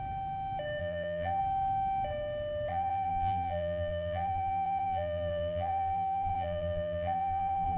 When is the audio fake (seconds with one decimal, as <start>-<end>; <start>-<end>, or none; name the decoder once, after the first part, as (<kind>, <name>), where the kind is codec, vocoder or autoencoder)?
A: 0.8-1.4 (vocoder, BigVGAN v2); 2.7-7.8